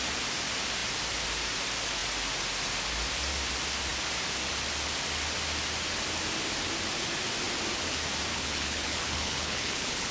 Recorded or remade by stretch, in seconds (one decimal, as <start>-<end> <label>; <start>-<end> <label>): 0.0-8.3 recorded; 8.3-10.1 remade